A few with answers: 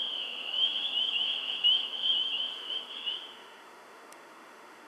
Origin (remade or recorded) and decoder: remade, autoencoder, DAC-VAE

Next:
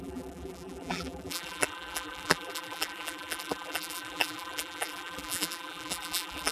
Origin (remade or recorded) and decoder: remade, vocoder, BigVGAN v2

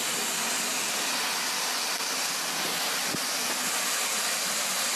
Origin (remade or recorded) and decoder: recorded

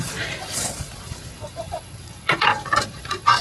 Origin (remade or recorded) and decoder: remade, vocoder, Vocos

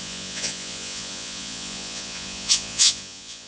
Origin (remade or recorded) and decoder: remade, vocoder, Vocos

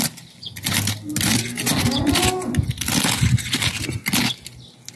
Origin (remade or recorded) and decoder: recorded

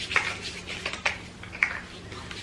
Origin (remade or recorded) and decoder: recorded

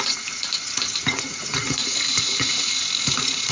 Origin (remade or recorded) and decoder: remade, vocoder, Vocos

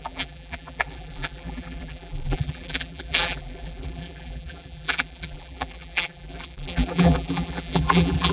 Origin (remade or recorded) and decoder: remade, vocoder, BigVGAN v2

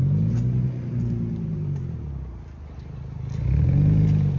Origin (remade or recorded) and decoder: recorded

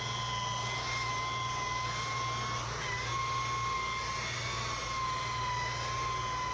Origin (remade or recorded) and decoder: recorded